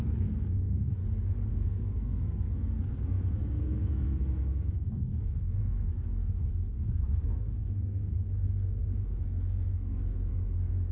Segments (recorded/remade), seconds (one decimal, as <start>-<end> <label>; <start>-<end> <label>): 0.0-1.0 remade; 1.0-1.5 recorded; 1.5-10.9 remade